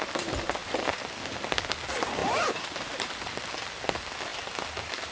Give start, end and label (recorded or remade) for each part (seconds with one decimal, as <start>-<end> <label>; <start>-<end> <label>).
0.0-0.6 recorded; 0.6-1.1 remade; 1.1-2.2 recorded; 2.2-3.1 remade; 3.1-5.1 recorded